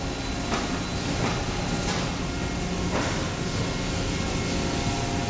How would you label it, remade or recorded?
recorded